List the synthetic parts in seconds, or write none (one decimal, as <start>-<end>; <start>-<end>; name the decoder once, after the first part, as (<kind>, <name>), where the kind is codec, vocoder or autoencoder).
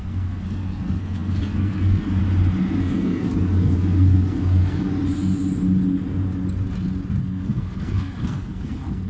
0.0-2.2 (codec, SNAC); 2.8-4.9; 7.2-9.1